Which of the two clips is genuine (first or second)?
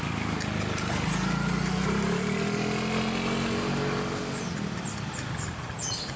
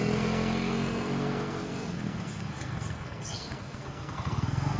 first